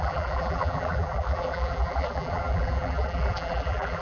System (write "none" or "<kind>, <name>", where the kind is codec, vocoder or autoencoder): vocoder, BigVGAN v2